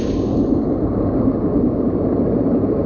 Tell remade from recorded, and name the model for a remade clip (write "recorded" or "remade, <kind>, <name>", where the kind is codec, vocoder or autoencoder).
recorded